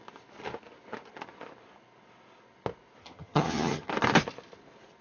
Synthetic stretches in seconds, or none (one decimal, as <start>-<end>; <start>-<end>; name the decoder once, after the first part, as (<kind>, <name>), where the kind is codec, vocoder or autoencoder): 3.0-3.9 (vocoder, HiFi-GAN)